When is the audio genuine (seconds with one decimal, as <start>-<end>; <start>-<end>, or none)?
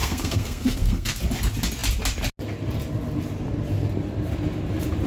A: 1.2-5.1